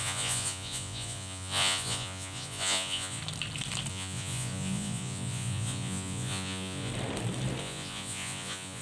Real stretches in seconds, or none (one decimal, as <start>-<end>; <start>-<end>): 3.2-3.9; 6.9-7.6